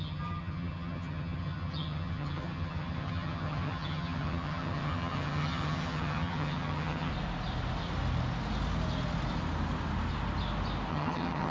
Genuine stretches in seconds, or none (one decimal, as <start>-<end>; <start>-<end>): 7.1-10.9